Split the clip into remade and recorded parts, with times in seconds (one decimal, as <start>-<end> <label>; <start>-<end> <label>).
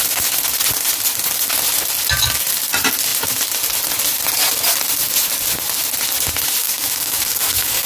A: 0.0-6.6 recorded; 6.6-7.9 remade